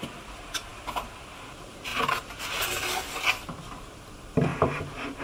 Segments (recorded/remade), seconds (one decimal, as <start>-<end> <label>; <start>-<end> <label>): 0.0-1.9 remade; 1.9-4.0 recorded; 4.0-5.2 remade